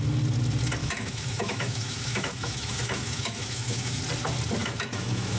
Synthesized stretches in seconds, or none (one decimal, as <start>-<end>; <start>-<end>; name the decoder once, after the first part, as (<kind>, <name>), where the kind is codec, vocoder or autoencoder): 0.8-4.0 (autoencoder, DAC-VAE); 4.6-5.4